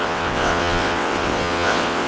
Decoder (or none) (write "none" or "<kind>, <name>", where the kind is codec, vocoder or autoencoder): vocoder, WaveNeXt